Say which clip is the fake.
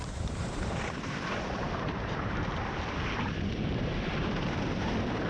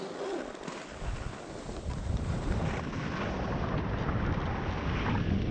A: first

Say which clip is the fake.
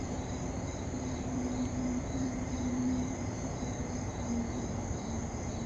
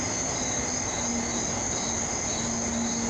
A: first